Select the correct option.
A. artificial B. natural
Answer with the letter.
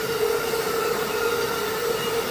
B